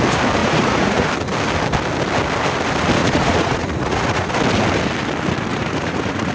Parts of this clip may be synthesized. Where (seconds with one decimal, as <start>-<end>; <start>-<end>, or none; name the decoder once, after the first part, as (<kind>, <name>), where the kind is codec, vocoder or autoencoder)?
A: 0.4-1.1 (vocoder, Vocos); 3.0-4.3; 5.5-6.3